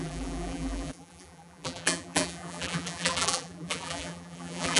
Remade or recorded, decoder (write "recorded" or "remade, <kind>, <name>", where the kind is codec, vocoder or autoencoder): remade, vocoder, BigVGAN v2